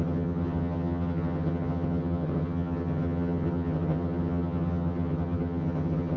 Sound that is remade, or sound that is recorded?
remade